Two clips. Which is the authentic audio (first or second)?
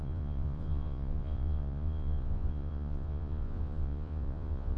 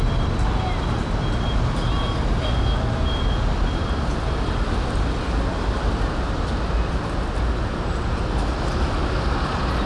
second